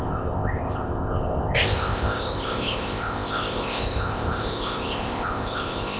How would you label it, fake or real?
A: fake